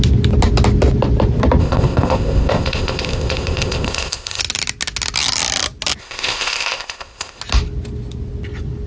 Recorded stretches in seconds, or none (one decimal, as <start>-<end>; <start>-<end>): 0.0-1.6; 4.4-6.0; 7.4-8.9